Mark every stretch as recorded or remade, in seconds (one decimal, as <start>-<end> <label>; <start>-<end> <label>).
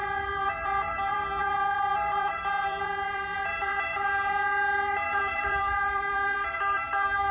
0.0-3.7 remade; 3.7-5.2 recorded; 5.2-7.3 remade